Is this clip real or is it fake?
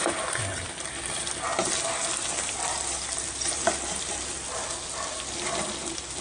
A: real